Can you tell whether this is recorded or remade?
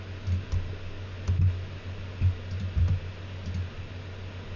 recorded